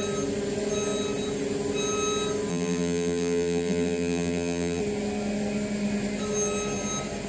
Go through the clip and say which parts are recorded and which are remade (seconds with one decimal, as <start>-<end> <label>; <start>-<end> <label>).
0.0-2.5 recorded; 2.5-4.8 remade; 4.8-7.3 recorded